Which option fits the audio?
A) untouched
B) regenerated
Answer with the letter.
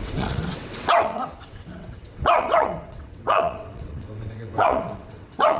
B